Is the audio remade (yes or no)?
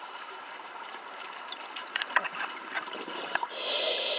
yes